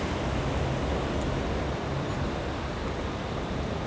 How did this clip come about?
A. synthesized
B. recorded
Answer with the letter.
B